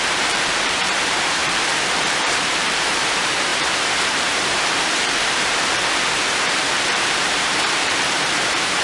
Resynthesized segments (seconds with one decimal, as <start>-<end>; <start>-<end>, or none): 0.0-8.8